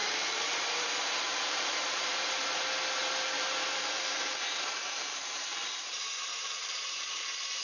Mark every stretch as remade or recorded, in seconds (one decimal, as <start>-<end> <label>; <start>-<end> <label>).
0.0-2.6 remade; 2.6-3.0 recorded; 3.0-7.6 remade